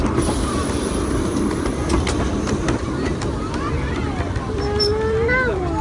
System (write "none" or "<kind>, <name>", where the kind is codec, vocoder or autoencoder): none